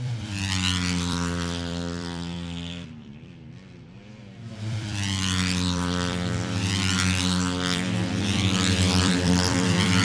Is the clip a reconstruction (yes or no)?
yes